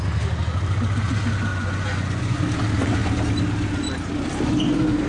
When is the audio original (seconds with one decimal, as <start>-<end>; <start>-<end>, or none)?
0.0-1.5; 2.4-5.1